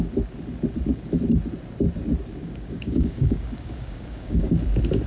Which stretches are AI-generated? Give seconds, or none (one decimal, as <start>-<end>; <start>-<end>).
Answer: 2.4-4.5